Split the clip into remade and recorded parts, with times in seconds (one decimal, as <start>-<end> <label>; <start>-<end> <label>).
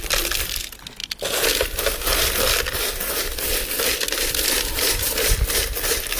0.0-6.2 recorded